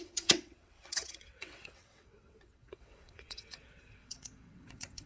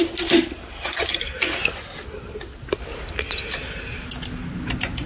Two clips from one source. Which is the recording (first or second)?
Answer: second